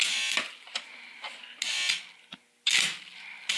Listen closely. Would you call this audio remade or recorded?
recorded